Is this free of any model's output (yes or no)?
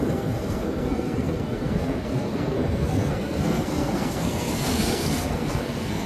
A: no